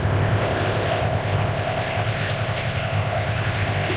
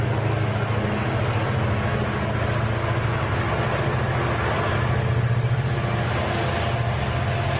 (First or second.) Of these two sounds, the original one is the second